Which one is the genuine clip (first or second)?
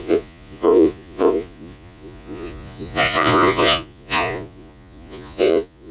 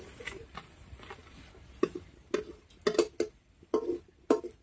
second